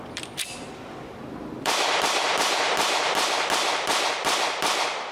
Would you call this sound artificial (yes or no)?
yes